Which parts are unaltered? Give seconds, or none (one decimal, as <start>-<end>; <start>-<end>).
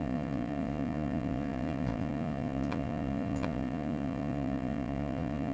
none